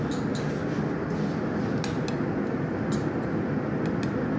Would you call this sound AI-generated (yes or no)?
no